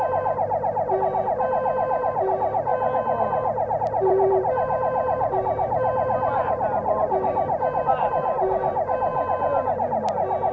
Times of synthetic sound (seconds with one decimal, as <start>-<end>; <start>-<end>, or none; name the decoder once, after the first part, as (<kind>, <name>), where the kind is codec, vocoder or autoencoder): 0.0-2.7 (vocoder, BigVGAN v2); 3.8-9.1